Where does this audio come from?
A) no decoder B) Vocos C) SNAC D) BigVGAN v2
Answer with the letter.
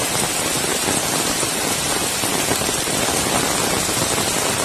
A